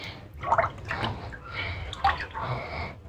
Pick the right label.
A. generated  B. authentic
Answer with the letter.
B